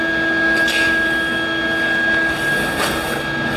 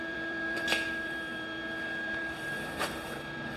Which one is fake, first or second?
second